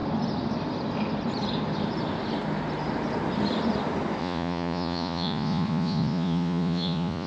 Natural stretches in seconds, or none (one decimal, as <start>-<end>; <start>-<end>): 0.0-4.2